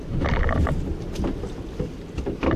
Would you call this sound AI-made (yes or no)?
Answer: no